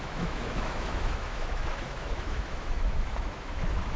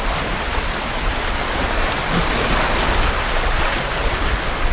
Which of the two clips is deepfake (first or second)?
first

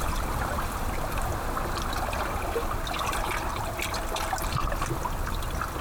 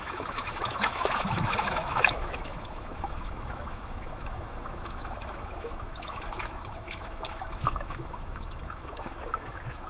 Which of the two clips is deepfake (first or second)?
second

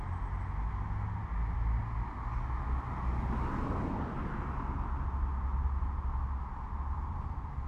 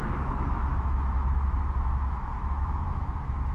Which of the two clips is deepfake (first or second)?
second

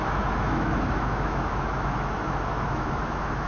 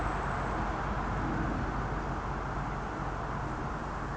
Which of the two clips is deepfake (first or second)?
first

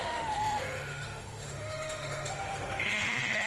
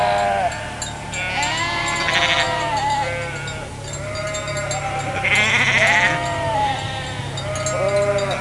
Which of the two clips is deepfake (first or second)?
first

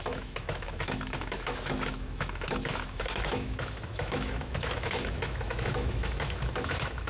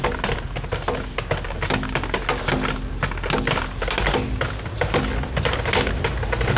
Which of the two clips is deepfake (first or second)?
first